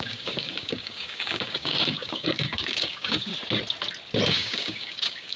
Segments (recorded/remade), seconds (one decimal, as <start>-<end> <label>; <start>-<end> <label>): 0.0-3.3 remade; 3.3-4.3 recorded; 4.3-5.4 remade